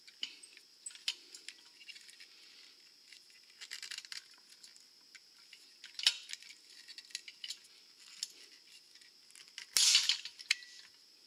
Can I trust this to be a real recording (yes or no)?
yes